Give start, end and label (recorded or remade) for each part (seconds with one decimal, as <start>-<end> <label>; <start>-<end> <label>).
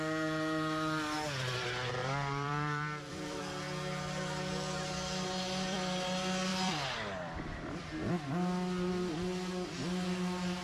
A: 0.0-2.0 recorded; 2.0-3.4 remade; 3.4-6.5 recorded; 6.5-8.1 remade; 8.1-10.6 recorded